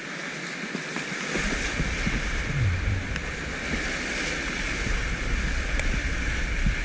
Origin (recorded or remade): recorded